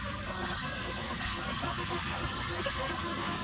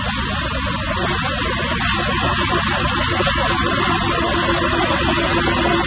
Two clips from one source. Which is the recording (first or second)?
second